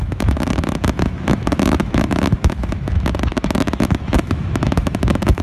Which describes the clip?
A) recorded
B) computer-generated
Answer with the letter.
B